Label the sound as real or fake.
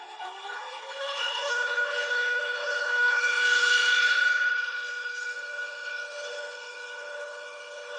fake